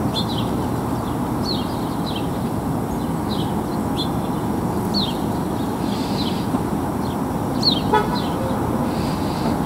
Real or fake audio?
real